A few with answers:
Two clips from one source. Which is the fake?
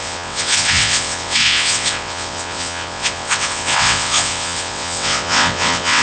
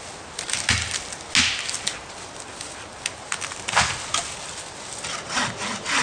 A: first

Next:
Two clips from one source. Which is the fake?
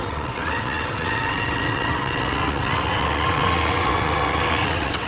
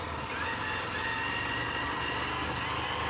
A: first